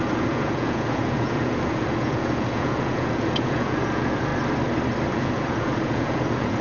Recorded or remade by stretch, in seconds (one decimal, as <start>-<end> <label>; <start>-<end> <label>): 0.0-4.3 remade; 4.3-5.1 recorded; 5.1-6.6 remade